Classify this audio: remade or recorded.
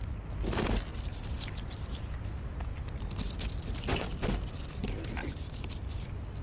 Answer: recorded